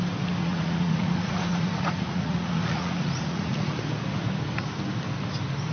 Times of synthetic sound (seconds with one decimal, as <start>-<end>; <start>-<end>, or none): 0.4-3.8